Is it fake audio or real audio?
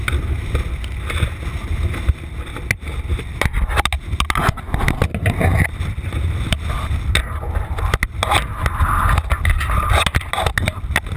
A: real